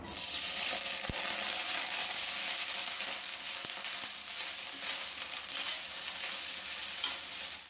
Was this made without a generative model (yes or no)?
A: yes